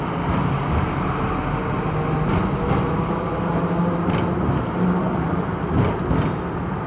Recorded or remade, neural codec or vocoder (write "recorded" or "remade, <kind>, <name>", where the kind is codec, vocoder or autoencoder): recorded